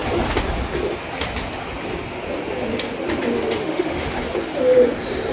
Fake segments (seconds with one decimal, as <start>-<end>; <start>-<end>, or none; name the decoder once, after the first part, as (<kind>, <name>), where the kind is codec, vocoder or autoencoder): 3.6-4.1 (autoencoder, DAC-VAE)